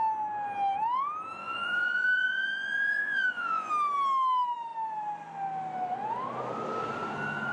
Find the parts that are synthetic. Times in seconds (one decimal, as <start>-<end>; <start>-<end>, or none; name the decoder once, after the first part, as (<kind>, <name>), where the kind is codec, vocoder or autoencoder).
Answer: 1.4-3.7 (vocoder, Vocos)